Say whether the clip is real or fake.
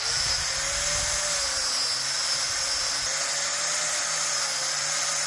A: real